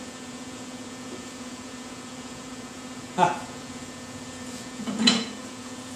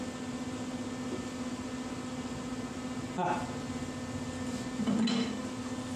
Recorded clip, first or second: second